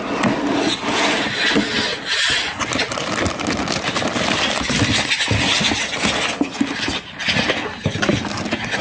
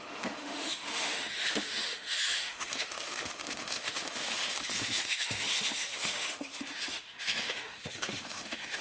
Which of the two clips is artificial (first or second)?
second